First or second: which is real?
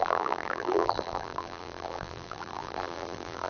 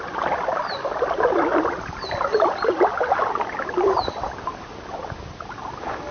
second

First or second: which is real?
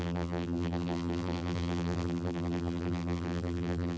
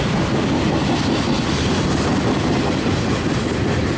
second